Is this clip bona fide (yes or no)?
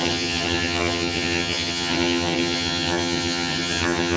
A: no